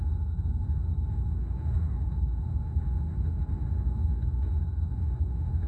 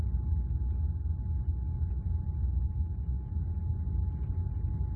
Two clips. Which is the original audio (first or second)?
second